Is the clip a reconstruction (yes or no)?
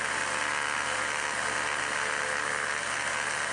no